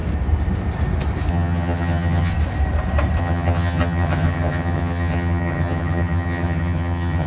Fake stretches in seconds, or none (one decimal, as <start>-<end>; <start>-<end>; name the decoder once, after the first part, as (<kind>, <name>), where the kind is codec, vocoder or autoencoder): 1.3-2.3 (vocoder, HiFi-GAN); 3.2-7.3